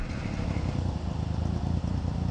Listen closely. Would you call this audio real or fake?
fake